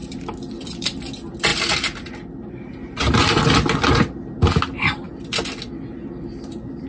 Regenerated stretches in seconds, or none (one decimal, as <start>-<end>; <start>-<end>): none